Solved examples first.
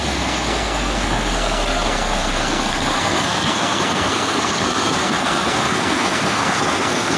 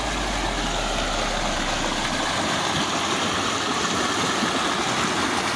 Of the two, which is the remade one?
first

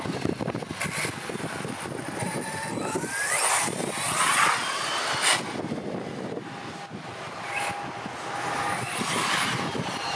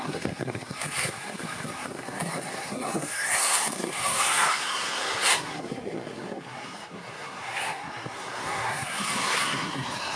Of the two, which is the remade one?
second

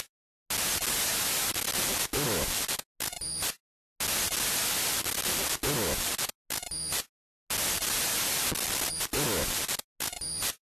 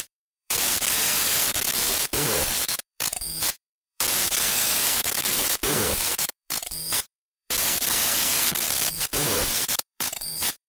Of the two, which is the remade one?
second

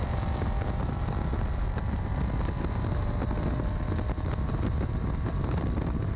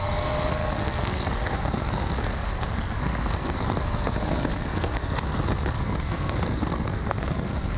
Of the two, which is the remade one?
second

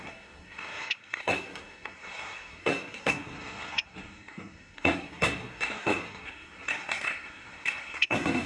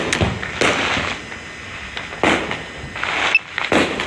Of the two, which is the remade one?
first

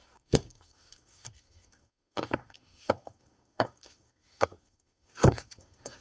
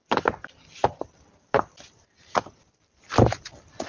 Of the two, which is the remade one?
first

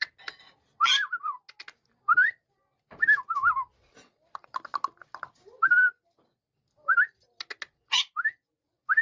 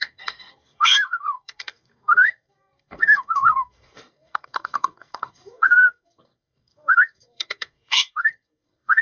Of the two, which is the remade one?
second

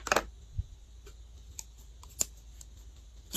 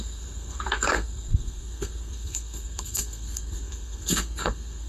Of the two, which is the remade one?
second